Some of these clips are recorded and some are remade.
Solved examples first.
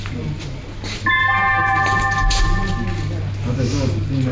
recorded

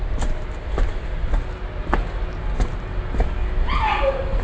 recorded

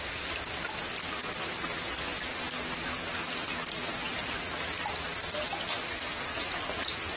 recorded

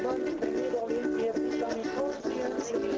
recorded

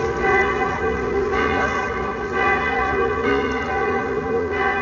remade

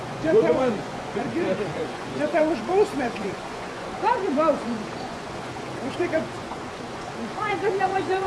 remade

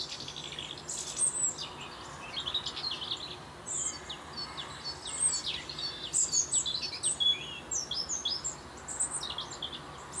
recorded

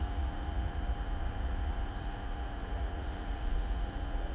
remade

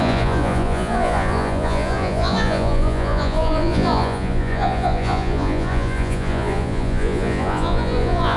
remade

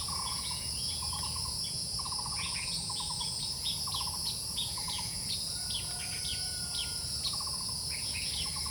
remade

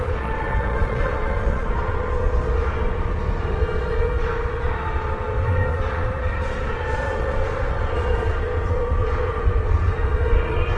remade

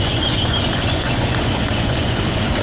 remade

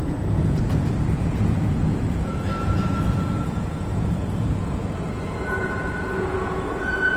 remade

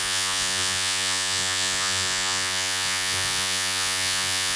remade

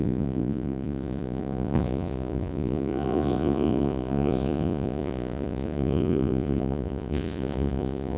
remade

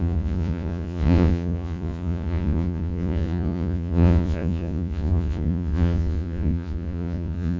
remade